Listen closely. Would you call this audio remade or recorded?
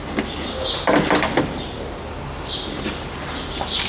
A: recorded